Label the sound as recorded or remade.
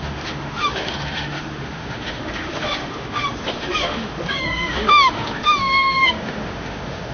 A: remade